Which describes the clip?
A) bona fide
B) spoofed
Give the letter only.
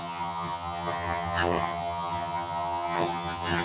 B